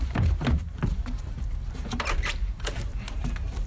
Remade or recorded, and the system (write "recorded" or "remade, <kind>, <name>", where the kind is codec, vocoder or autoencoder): remade, vocoder, BigVGAN v2